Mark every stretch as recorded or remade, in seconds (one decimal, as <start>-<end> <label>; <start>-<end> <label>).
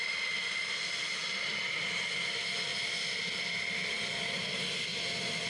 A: 0.0-5.5 recorded